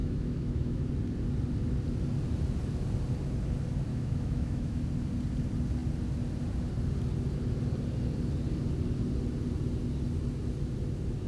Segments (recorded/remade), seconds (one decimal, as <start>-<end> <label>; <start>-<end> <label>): 0.0-0.9 remade; 0.9-3.9 recorded; 3.9-4.8 remade; 4.8-11.3 recorded